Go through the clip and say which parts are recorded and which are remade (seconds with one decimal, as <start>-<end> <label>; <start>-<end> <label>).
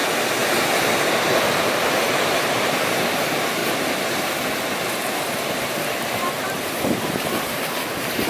0.0-1.6 recorded; 1.6-3.6 remade; 3.6-4.6 recorded; 4.6-8.3 remade